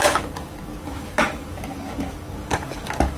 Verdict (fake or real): fake